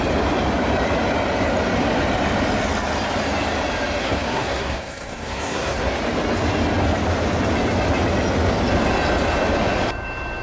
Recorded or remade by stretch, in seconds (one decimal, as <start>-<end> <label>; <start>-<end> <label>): 0.0-4.0 recorded; 4.0-5.9 remade; 5.9-10.4 recorded